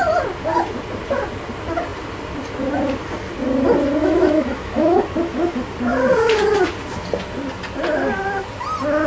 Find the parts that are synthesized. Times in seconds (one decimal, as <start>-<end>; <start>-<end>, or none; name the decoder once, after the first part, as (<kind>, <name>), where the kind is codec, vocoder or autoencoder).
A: 4.0-5.0 (autoencoder, DAC-VAE)